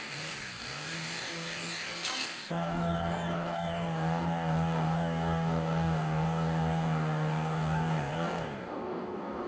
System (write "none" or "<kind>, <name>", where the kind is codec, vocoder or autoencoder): codec, DAC